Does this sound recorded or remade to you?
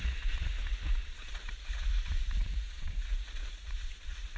remade